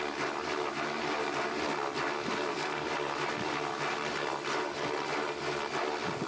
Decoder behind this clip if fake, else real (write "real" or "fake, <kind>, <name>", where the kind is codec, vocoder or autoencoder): real